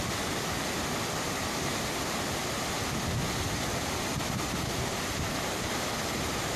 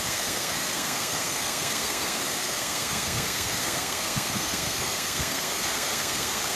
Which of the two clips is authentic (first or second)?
first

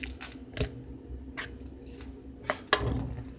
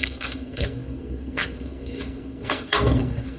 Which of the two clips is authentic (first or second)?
first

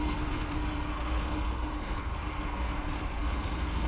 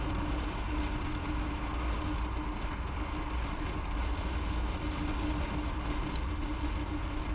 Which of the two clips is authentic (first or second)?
second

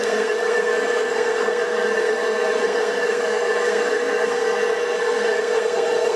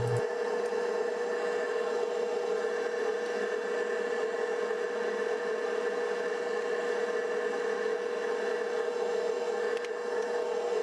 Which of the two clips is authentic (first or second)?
second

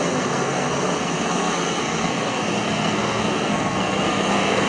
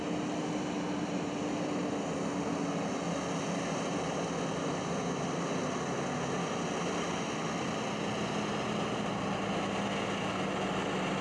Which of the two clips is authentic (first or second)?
second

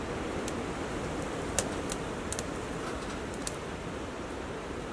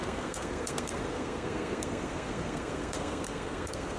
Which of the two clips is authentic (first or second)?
first